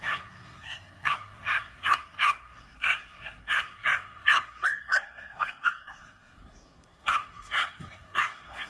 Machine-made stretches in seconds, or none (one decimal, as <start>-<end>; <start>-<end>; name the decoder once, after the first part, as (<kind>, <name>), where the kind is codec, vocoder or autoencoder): 0.0-8.7 (codec, SNAC)